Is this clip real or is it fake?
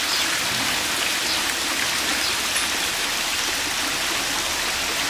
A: real